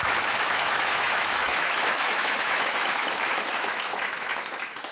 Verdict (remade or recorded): remade